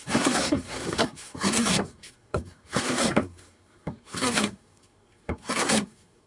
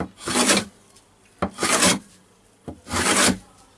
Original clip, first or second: second